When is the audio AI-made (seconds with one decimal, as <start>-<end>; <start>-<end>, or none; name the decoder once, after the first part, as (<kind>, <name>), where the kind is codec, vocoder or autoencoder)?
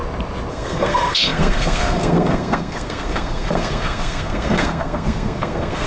0.5-5.9 (codec, SNAC)